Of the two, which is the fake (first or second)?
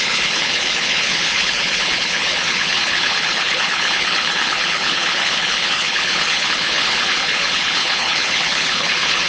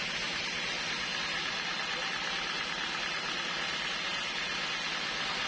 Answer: first